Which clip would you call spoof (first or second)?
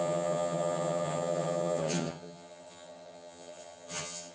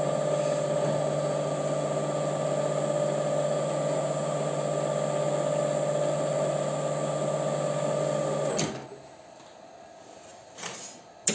first